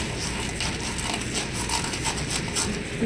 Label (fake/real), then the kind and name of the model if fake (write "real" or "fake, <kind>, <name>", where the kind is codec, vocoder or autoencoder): real